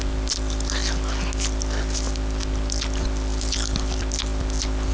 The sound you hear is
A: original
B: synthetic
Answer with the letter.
A